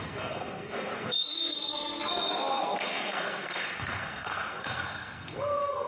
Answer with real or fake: fake